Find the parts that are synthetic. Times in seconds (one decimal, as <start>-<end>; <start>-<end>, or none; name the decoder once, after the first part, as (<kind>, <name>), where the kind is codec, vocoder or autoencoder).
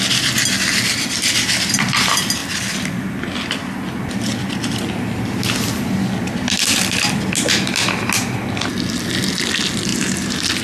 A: 9.9-10.6 (vocoder, BigVGAN v2)